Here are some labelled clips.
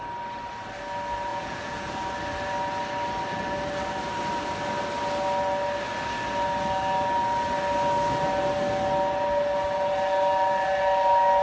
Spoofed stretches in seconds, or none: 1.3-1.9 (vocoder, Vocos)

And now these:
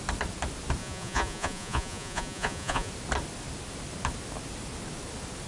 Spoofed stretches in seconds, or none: 0.8-2.9 (vocoder, Vocos)

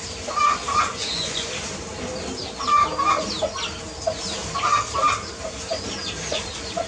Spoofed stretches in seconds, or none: 0.9-1.5 (vocoder, Vocos)

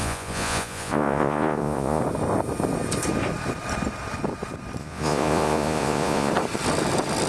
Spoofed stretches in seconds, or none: 0.0-2.0 (vocoder, Vocos); 4.8-6.3

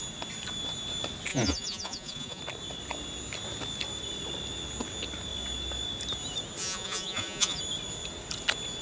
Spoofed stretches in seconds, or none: 1.3-2.4 (vocoder, Vocos); 6.6-7.6